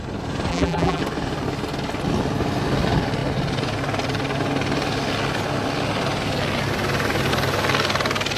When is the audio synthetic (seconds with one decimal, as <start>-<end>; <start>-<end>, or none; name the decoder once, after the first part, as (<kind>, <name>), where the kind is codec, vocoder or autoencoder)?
0.5-1.0 (vocoder, BigVGAN v2)